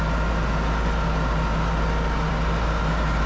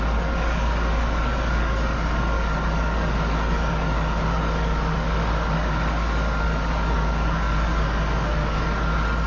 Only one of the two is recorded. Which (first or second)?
first